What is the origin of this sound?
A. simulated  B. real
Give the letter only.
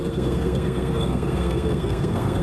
A